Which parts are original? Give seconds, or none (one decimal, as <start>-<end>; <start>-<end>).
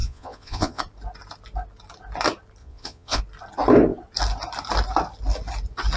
0.8-2.6; 3.2-6.0